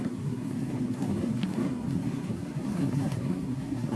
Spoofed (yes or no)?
yes